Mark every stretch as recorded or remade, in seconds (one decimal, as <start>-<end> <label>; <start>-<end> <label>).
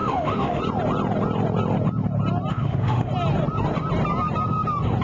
0.0-0.6 remade; 0.6-2.5 recorded; 2.5-3.1 remade; 3.1-5.0 recorded